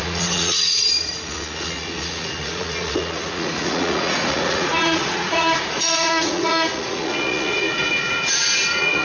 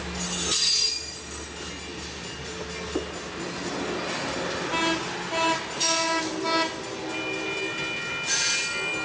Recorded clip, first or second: second